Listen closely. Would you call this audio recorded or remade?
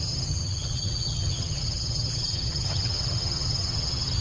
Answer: remade